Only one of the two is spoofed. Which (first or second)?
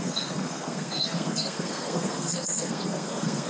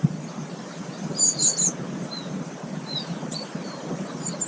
first